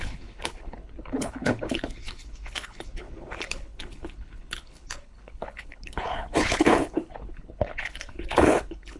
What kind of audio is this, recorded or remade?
remade